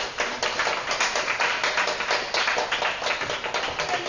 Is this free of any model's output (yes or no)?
yes